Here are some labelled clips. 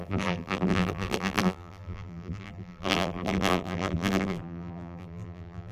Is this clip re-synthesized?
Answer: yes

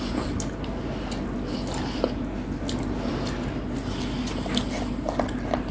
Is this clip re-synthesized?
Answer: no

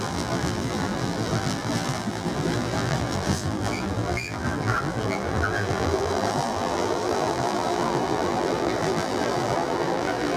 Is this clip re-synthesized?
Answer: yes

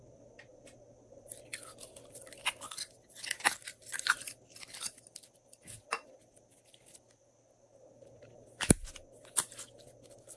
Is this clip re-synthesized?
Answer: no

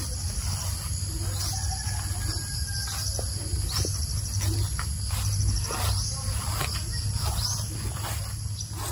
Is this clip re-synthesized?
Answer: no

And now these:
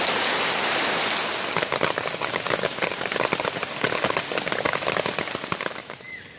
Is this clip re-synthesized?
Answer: no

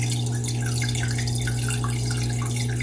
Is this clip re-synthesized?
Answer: no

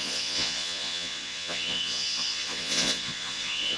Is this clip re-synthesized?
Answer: yes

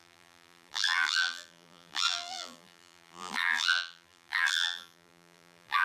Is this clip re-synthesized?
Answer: yes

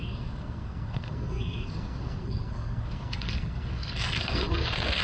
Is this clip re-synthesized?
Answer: yes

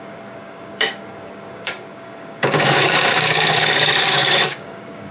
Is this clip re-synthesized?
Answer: yes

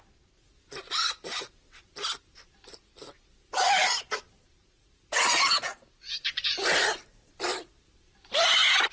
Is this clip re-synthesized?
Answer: no